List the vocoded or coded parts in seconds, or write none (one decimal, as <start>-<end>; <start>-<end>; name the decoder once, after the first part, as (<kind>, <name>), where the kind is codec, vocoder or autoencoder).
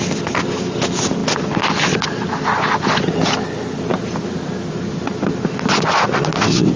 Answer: none